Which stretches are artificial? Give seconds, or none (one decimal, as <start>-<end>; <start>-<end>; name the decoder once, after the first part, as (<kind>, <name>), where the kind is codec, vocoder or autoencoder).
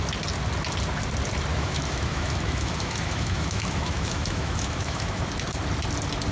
1.5-5.2 (autoencoder, DAC-VAE)